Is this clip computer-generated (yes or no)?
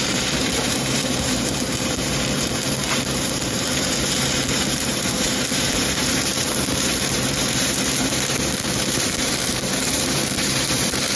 yes